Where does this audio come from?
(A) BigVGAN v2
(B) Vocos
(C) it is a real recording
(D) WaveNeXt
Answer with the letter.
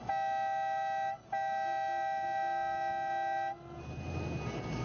C